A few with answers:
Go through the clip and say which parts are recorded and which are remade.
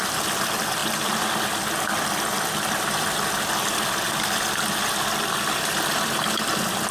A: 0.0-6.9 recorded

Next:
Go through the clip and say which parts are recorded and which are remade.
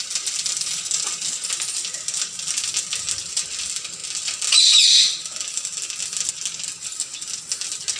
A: 0.0-8.0 recorded